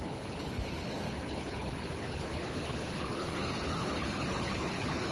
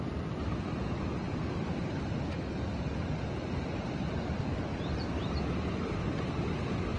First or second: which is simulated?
first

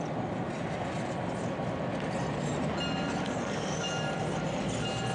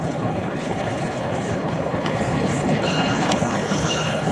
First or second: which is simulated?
second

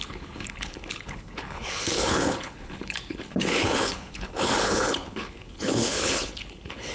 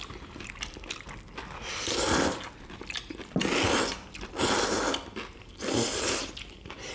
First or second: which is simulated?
first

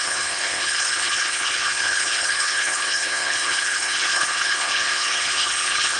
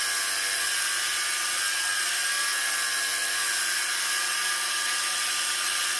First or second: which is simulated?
first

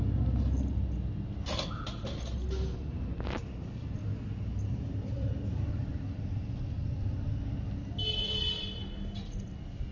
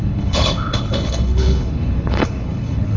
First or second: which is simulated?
second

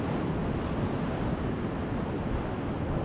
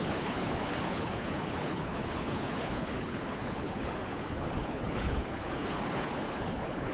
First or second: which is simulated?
second